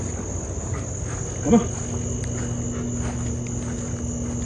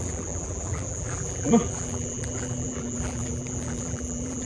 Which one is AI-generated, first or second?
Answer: second